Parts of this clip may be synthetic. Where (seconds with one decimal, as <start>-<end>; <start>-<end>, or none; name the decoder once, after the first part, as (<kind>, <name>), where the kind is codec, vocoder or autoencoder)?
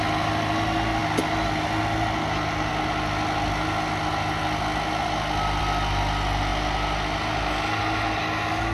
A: none